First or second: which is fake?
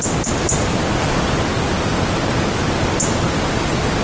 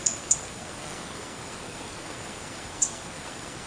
second